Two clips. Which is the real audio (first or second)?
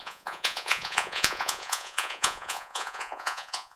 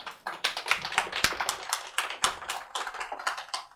second